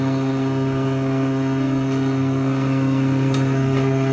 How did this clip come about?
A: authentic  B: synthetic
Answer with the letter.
B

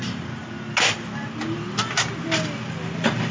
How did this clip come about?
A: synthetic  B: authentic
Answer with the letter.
B